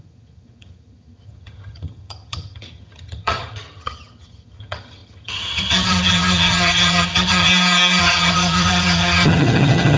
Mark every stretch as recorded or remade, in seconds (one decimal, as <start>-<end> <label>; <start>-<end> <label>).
0.0-7.5 remade; 7.5-8.0 recorded; 8.0-10.0 remade